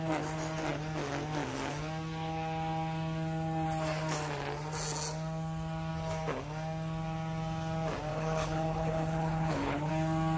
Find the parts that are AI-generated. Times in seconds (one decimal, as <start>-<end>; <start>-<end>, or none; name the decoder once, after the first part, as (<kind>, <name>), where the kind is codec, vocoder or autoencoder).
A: 8.1-9.9 (codec, HILCodec)